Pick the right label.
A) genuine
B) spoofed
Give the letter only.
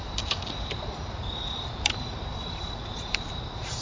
B